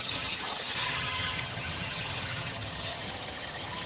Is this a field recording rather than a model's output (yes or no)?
no